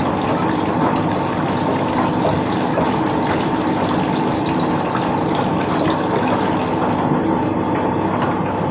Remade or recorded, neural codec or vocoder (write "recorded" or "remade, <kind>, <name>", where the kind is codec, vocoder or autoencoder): recorded